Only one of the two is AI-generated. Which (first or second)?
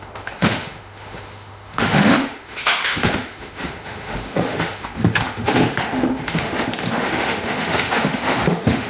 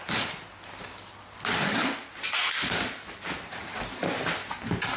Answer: first